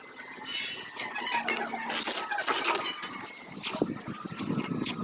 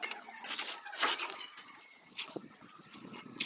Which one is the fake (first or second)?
second